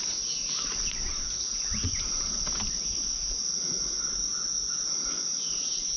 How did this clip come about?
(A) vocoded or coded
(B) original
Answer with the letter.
B